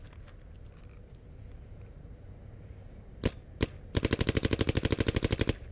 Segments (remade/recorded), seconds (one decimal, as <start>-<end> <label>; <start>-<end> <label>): 0.0-1.5 recorded; 1.5-4.9 remade; 4.9-5.7 recorded